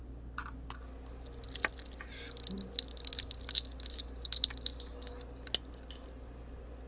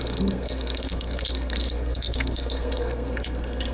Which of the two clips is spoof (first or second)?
second